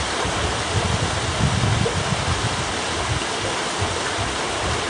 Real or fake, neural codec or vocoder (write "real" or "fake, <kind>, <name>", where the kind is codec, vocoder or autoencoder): real